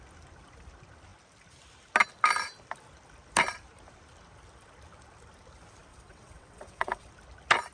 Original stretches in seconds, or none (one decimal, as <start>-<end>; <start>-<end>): 0.0-5.9; 7.1-7.7

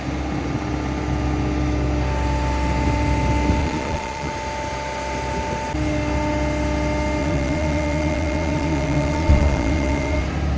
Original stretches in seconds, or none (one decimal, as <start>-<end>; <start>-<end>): 0.0-3.6; 4.3-7.2; 10.2-10.6

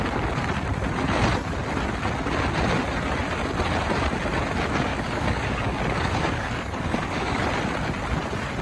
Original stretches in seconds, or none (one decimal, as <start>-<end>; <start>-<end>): 0.0-4.9; 7.4-8.6